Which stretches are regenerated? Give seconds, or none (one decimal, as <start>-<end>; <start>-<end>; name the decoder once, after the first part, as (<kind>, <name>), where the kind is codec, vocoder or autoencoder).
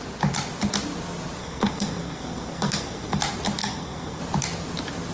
1.4-3.2 (codec, SNAC); 3.6-4.2